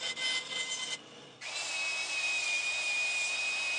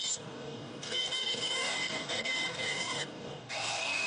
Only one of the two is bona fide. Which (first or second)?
first